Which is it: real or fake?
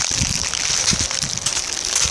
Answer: real